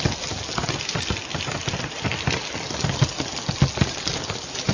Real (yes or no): yes